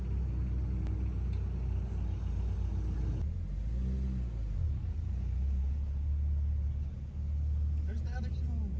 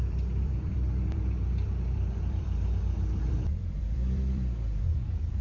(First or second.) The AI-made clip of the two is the second